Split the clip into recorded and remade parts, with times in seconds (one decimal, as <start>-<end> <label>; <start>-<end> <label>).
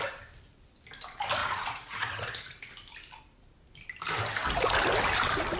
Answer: 0.0-1.4 recorded; 1.4-2.6 remade; 2.6-5.6 recorded